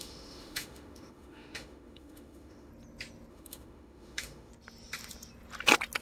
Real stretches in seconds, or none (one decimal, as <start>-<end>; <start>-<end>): 2.7-3.3; 4.5-6.0